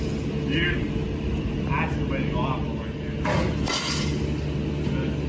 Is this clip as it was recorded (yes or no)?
yes